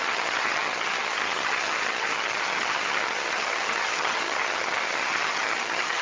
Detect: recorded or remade remade